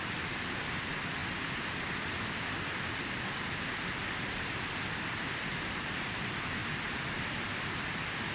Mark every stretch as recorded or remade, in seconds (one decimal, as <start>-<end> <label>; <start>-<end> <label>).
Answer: 0.0-1.2 remade; 1.2-5.4 recorded; 5.4-6.6 remade; 6.6-7.9 recorded; 7.9-8.3 remade